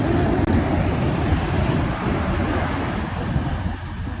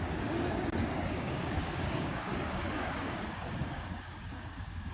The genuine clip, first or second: first